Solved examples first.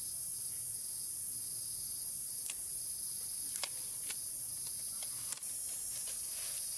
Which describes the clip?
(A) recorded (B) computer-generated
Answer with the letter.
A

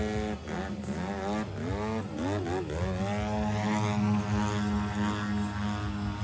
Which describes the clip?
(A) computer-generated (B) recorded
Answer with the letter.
B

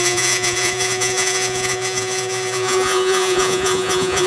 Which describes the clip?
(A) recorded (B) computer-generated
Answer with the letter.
B